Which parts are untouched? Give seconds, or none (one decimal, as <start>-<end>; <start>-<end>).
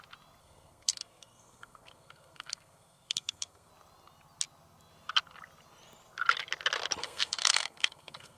0.0-0.4; 3.7-7.0